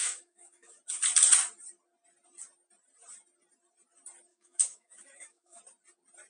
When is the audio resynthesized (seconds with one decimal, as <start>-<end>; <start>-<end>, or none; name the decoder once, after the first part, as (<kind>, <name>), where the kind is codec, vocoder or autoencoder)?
0.0-0.8 (autoencoder, DAC-VAE); 4.3-5.6